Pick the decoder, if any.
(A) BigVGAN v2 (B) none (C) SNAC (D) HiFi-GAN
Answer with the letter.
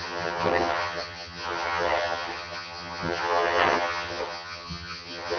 D